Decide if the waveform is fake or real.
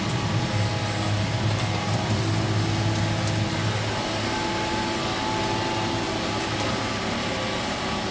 real